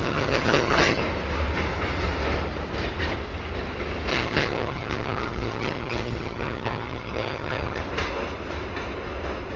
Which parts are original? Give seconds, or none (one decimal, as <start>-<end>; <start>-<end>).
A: 1.0-4.1; 7.8-9.6